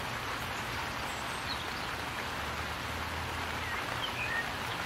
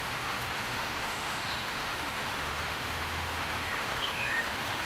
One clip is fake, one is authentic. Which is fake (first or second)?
second